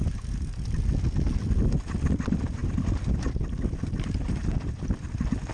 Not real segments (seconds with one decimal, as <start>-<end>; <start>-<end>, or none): none